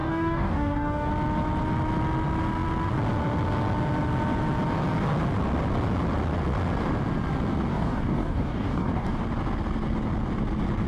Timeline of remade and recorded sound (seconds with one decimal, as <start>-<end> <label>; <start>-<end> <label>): 0.0-1.1 remade; 1.1-7.7 recorded; 7.7-9.2 remade; 9.2-10.9 recorded